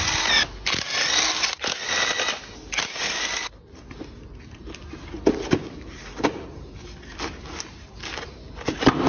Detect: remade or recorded recorded